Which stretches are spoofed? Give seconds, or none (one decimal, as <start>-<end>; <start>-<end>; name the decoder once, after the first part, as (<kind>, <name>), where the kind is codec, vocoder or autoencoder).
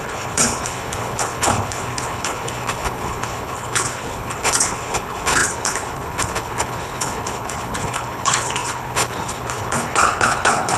0.0-10.8 (codec, HILCodec)